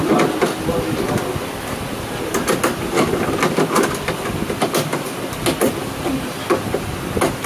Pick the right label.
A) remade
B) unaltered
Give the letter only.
B